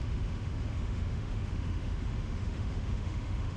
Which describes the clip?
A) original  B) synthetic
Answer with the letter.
B